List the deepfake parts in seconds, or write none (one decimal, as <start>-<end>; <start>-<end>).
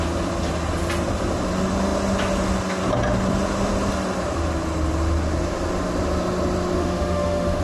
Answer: 6.8-7.6